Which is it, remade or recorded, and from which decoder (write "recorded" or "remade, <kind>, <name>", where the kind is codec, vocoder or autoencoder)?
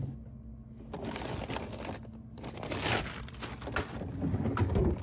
recorded